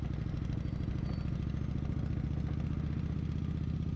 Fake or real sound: real